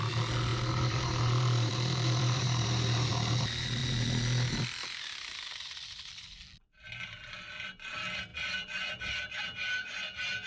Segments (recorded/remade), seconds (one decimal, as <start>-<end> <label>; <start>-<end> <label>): 0.0-0.5 recorded; 0.5-3.1 remade; 3.1-10.5 recorded